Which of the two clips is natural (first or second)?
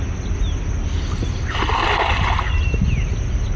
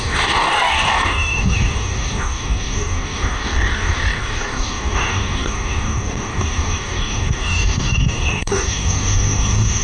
first